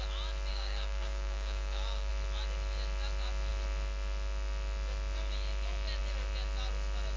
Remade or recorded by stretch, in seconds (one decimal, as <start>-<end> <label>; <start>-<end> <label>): 0.0-0.5 recorded; 0.5-2.1 remade; 2.1-7.2 recorded